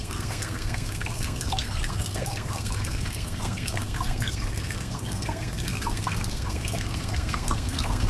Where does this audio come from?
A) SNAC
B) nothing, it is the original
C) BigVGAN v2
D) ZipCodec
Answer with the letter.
A